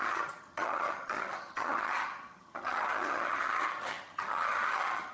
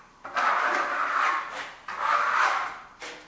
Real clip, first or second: second